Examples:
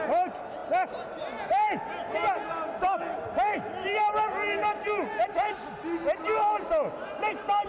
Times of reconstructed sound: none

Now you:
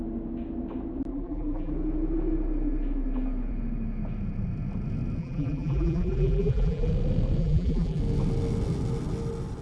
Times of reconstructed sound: 1.1-1.7 (vocoder, BigVGAN v2); 5.2-6.9; 7.4-8.0

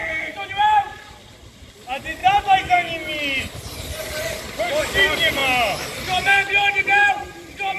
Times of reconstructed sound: 0.0-2.2 (vocoder, BigVGAN v2); 3.4-5.4; 6.0-7.8

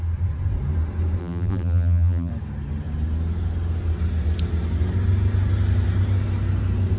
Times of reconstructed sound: 1.2-2.3 (vocoder, BigVGAN v2)